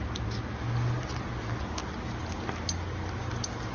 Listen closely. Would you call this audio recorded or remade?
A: recorded